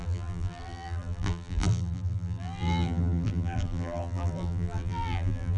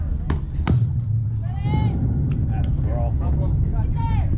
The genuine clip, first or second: second